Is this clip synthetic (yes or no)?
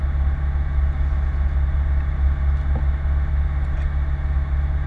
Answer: no